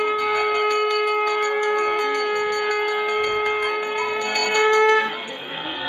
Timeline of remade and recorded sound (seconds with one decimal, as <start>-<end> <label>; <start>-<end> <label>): 0.0-2.0 remade; 2.0-2.7 recorded; 2.7-5.9 remade